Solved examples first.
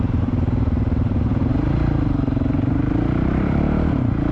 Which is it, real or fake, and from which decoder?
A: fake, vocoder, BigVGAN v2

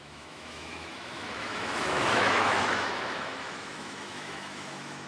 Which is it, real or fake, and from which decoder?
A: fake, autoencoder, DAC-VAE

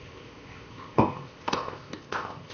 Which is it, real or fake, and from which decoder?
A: fake, codec, ZipCodec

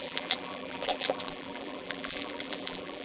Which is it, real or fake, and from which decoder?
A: fake, vocoder, BigVGAN v2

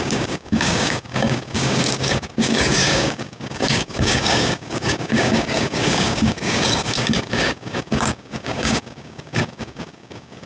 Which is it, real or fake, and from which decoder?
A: fake, codec, DAC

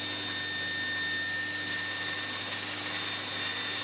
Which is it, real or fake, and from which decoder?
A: real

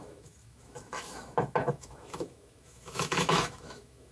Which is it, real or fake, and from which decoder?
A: fake, autoencoder, DAC-VAE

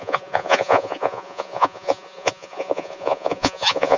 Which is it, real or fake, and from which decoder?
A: fake, vocoder, Vocos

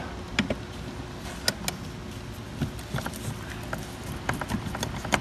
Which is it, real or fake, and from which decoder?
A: real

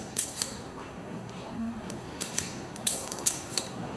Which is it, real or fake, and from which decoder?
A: fake, codec, SNAC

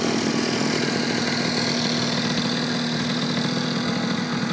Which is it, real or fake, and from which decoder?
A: real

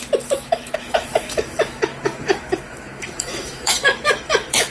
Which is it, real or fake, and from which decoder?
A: fake, autoencoder, DAC-VAE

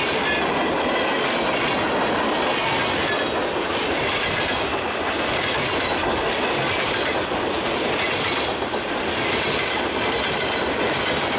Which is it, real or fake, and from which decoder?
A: real